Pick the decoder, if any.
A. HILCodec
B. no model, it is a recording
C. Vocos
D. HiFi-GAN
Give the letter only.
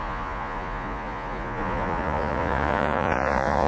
C